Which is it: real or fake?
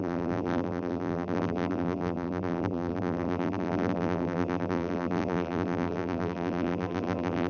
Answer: fake